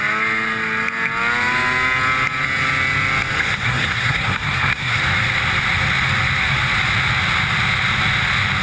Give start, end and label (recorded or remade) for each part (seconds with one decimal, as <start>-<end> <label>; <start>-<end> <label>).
0.0-3.4 recorded; 3.4-5.0 remade; 5.0-8.6 recorded